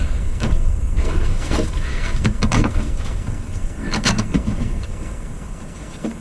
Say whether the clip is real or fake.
fake